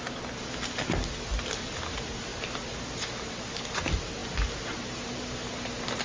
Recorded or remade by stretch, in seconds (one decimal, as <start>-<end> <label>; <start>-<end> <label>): 0.0-6.0 recorded